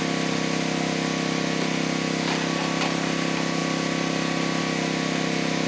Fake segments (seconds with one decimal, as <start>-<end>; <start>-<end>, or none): none